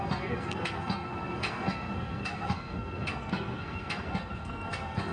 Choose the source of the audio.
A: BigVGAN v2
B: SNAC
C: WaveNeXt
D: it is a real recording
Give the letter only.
B